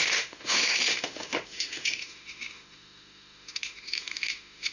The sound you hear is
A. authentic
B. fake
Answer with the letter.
B